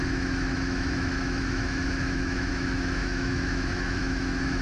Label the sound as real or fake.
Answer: fake